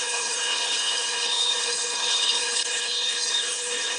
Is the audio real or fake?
fake